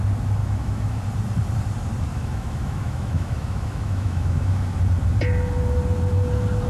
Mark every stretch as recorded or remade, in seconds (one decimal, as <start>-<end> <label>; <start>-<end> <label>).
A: 0.0-0.4 recorded; 0.4-1.0 remade; 1.0-2.1 recorded; 2.1-4.8 remade; 4.8-6.7 recorded